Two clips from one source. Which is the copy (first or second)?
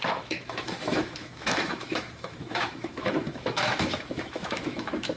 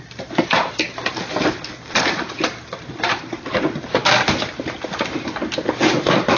first